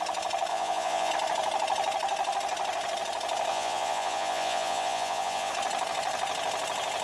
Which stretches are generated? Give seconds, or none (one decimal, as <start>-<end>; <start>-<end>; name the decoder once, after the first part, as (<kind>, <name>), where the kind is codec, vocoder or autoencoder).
0.5-1.1 (vocoder, Vocos); 3.5-5.5